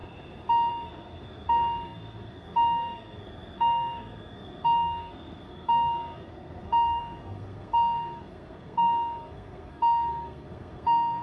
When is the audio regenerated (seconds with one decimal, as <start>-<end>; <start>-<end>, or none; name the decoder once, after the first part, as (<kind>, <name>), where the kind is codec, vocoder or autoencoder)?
0.7-11.2 (codec, SNAC)